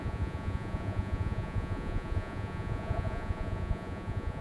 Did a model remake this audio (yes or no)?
yes